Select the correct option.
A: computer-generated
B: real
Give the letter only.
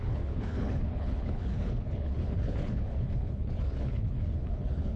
A